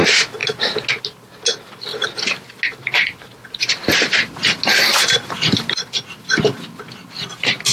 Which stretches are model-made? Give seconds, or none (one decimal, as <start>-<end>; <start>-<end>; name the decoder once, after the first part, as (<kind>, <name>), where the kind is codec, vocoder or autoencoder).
none